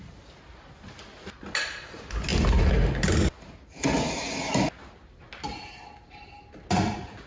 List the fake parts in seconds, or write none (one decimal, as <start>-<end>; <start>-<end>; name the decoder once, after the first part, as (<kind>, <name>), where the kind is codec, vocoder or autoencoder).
none